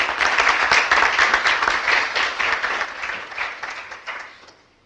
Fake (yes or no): no